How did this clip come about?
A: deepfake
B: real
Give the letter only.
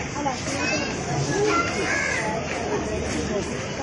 B